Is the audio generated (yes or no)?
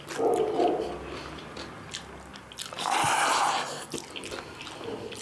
no